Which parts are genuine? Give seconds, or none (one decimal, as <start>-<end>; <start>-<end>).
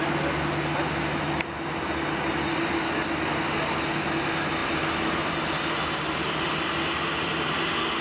0.0-8.0